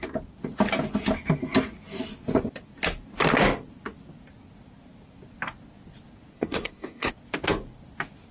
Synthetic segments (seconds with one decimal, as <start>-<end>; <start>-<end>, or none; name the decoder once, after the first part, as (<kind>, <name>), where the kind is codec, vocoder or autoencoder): 6.3-7.1 (codec, SNAC)